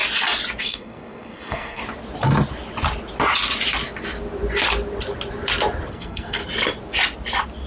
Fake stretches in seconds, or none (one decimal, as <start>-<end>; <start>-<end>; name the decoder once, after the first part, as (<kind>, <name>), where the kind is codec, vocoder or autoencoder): 0.6-1.8 (codec, SNAC); 5.9-6.4